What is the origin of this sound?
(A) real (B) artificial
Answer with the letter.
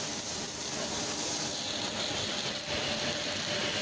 B